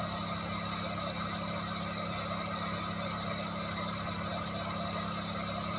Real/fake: real